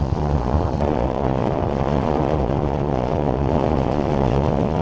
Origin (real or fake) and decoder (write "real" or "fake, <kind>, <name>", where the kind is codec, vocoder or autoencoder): fake, vocoder, Vocos